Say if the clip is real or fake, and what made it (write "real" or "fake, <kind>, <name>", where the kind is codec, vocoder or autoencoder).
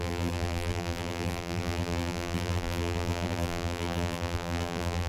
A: fake, vocoder, BigVGAN v2